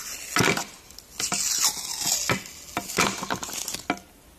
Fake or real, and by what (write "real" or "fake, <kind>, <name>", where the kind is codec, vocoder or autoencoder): real